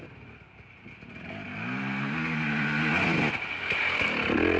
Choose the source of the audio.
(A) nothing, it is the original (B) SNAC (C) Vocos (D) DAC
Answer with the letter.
A